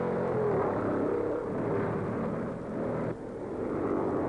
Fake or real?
real